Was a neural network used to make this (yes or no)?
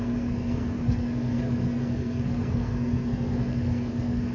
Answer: yes